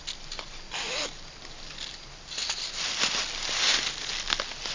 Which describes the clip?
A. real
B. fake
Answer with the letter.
A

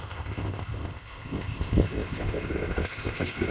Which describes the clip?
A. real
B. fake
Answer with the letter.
B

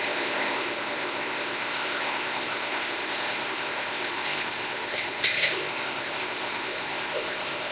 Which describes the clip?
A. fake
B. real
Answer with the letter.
A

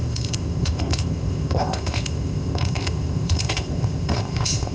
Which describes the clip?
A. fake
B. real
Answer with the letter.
A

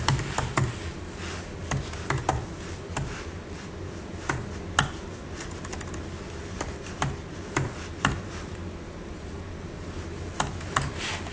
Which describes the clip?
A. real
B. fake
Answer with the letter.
A